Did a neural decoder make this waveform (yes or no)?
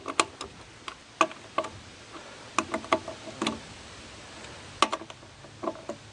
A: no